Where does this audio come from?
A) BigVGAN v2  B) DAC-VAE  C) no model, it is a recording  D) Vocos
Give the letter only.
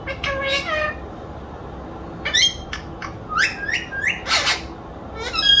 C